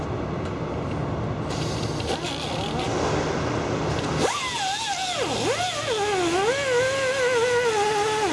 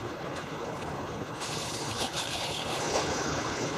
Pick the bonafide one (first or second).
first